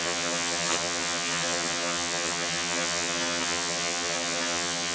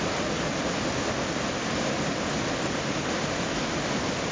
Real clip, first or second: second